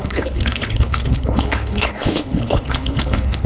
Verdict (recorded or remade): remade